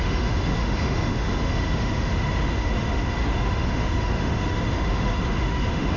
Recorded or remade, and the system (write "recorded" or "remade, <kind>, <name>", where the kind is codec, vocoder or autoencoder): remade, autoencoder, DAC-VAE